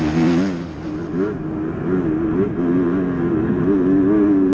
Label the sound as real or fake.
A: real